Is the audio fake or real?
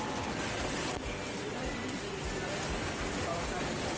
real